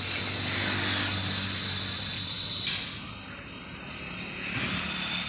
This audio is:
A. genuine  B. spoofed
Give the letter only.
A